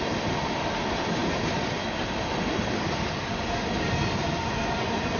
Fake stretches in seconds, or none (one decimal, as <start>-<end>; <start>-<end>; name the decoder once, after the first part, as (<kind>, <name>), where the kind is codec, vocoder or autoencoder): none